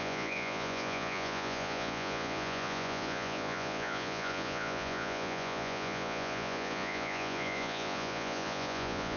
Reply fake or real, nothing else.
fake